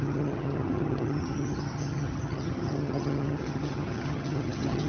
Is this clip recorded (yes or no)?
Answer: no